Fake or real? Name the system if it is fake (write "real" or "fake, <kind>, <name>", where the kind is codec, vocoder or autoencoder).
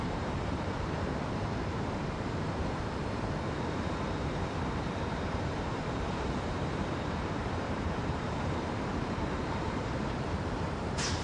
fake, vocoder, BigVGAN v2